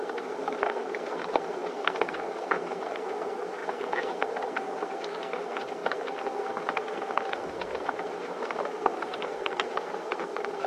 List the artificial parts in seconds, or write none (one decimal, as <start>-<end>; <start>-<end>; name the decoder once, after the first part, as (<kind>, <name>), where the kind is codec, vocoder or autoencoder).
0.0-10.7 (codec, SNAC)